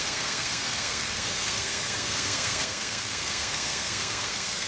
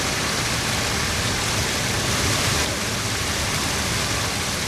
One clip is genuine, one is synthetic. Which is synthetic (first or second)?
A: first